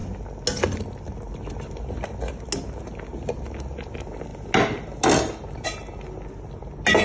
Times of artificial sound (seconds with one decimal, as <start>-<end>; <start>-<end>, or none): none